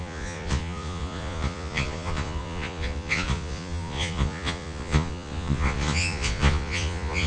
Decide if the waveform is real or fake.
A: fake